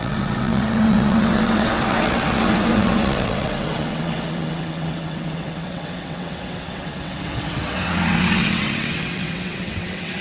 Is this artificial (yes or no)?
yes